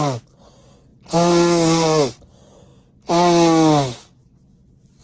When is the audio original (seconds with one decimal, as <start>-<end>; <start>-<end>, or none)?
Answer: 0.0-5.0